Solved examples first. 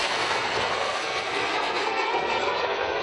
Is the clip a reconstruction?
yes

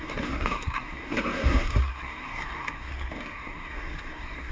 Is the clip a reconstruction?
yes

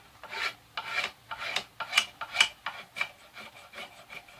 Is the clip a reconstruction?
no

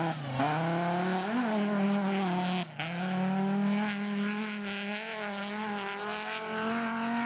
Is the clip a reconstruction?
no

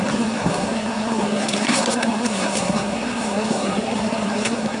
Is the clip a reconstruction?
yes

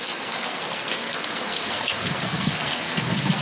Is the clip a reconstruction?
yes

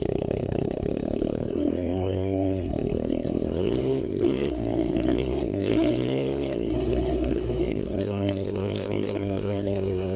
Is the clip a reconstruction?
yes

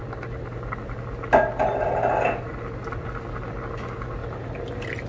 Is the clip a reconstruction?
no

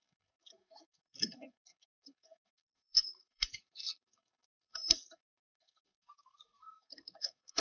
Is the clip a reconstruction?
yes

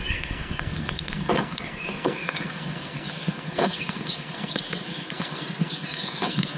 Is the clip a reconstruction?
yes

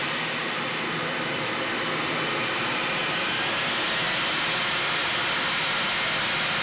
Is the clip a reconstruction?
no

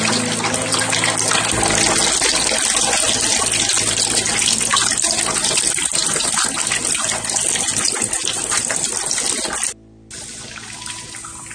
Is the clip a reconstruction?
no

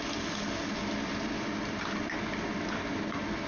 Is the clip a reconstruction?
no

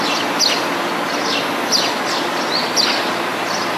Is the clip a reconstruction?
no